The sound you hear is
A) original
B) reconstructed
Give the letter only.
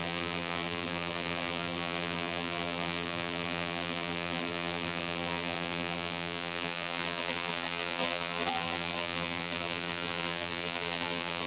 B